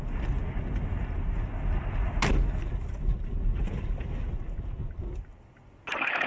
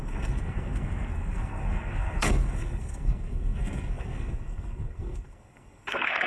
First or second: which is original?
first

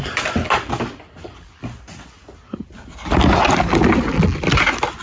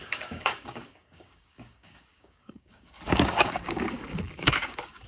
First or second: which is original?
first